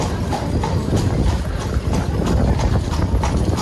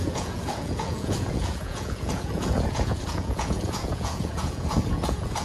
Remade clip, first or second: second